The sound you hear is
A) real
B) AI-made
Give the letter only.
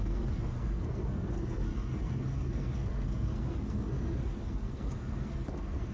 B